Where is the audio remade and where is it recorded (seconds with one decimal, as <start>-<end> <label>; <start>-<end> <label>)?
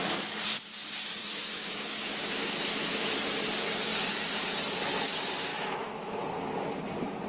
0.0-1.2 recorded; 1.2-3.0 remade; 3.0-5.5 recorded; 5.5-6.2 remade; 6.2-7.3 recorded